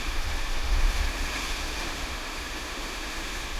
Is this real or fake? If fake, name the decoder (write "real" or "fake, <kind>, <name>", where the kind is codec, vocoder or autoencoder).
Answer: fake, autoencoder, DAC-VAE